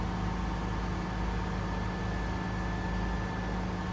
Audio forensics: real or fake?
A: real